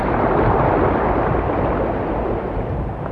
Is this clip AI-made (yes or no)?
no